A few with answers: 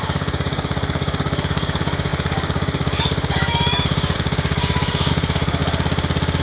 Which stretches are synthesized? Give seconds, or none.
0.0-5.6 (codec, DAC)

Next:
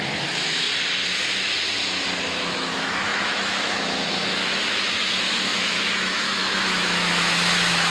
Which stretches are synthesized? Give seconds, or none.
0.0-0.7 (autoencoder, DAC-VAE); 2.2-7.9

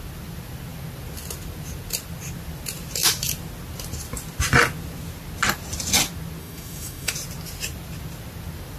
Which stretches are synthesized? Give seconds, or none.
6.4-7.1 (autoencoder, DAC-VAE)

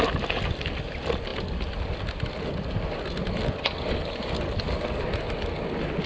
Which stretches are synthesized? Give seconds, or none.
none